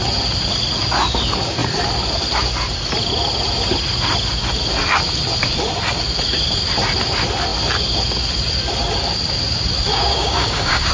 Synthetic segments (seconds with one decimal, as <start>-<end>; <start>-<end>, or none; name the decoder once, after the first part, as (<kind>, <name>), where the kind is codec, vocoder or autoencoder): 9.9-10.9 (codec, DAC)